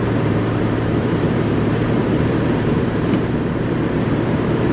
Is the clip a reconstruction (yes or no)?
yes